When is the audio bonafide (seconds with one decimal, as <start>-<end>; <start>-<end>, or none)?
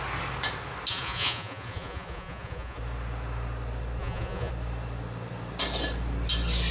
0.0-0.9; 2.8-4.0; 4.5-6.7